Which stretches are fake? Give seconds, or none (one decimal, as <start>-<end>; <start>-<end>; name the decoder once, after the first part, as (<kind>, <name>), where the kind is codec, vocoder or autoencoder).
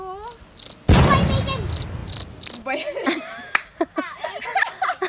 none